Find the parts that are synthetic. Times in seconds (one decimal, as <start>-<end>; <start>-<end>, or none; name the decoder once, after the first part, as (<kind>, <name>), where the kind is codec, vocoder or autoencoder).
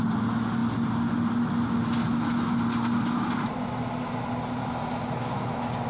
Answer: none